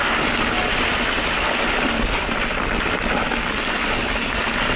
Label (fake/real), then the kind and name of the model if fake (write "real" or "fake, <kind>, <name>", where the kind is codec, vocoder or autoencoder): real